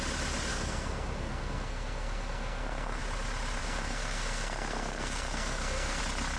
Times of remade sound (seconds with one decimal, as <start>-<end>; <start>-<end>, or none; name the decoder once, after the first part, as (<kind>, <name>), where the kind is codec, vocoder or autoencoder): 0.5-3.0 (codec, SNAC); 3.6-6.0